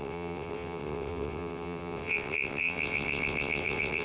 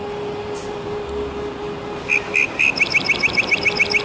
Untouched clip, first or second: second